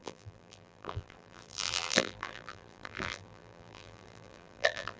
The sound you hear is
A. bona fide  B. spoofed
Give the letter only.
B